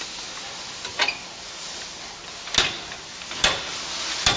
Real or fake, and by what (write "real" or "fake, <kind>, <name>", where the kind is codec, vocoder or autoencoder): real